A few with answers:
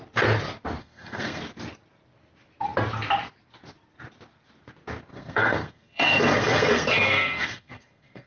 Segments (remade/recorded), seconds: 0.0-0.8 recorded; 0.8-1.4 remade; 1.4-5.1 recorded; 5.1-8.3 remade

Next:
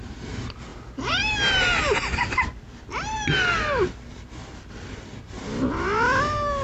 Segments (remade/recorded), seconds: 0.0-6.6 recorded

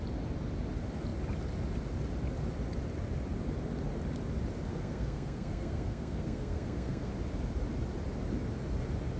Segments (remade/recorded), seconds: 0.0-4.7 recorded; 4.7-7.1 remade; 7.1-9.2 recorded

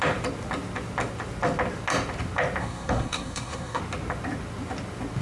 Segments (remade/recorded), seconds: 0.0-2.6 recorded; 2.6-3.8 remade; 3.8-5.2 recorded